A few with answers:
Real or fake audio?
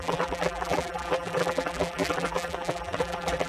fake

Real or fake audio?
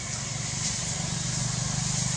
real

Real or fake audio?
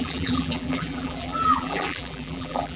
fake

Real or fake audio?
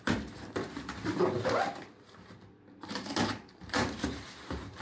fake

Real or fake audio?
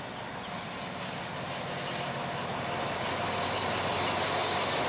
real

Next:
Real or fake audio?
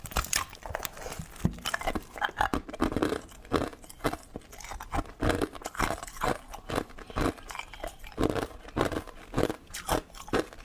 real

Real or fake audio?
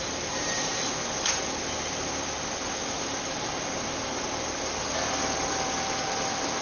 fake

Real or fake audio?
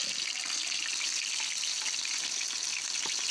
real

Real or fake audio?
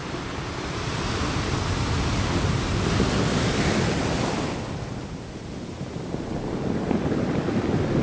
real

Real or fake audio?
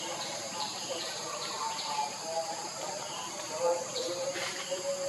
fake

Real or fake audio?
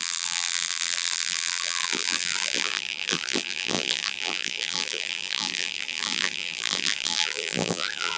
fake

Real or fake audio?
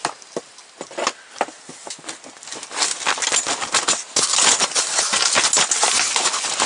real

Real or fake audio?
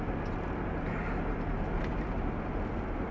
real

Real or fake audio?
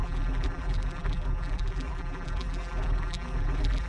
fake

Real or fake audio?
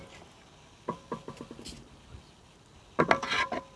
real